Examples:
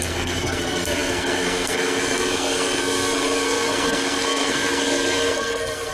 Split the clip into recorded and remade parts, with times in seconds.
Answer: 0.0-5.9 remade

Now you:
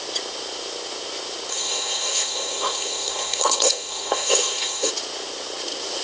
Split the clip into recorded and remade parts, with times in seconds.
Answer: 0.0-1.5 recorded; 1.5-4.9 remade; 4.9-6.0 recorded

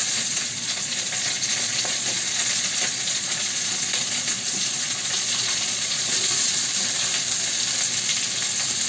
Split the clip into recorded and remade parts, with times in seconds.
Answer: 0.0-6.7 remade; 6.7-8.9 recorded

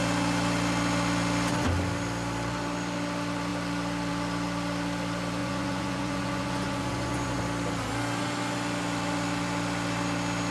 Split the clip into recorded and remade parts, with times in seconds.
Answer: 0.0-5.4 recorded; 5.4-7.4 remade; 7.4-10.5 recorded